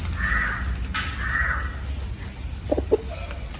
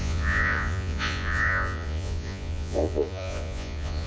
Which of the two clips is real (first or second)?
first